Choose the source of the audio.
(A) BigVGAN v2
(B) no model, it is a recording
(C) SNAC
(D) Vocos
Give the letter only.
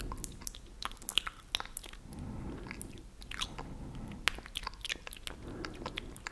B